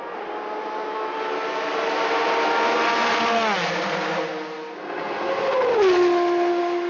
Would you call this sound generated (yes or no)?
no